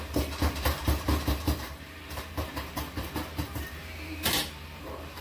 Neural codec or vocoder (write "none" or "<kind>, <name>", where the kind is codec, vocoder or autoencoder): vocoder, BigVGAN v2